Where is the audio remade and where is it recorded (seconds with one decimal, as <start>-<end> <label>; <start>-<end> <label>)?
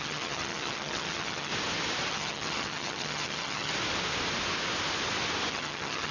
0.0-1.5 remade; 1.5-2.1 recorded; 2.1-3.7 remade; 3.7-5.5 recorded; 5.5-6.1 remade